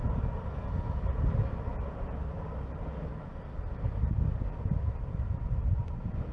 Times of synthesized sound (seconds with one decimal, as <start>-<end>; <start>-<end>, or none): none